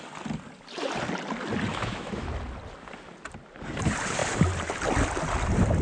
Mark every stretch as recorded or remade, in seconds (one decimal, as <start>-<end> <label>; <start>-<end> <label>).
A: 0.0-1.7 recorded; 1.7-2.3 remade; 2.3-5.8 recorded